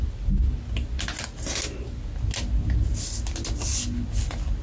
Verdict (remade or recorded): recorded